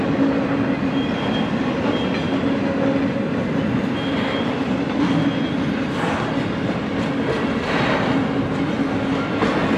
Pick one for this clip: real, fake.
real